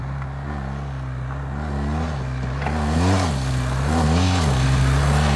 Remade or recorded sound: recorded